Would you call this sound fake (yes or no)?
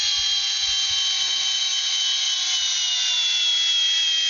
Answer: no